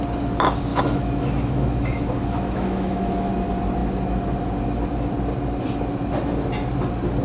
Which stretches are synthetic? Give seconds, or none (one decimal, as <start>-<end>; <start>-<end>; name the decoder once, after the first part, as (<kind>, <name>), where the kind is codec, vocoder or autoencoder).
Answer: 0.7-3.3 (autoencoder, DAC-VAE)